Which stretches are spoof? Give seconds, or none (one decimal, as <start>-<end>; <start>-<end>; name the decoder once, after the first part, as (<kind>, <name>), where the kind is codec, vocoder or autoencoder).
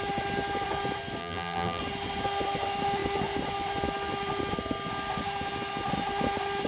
1.2-1.8 (vocoder, BigVGAN v2)